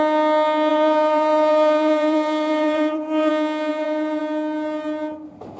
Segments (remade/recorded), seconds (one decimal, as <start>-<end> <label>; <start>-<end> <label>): 0.0-0.7 recorded; 0.7-3.3 remade; 3.3-3.7 recorded; 3.7-4.2 remade; 4.2-5.6 recorded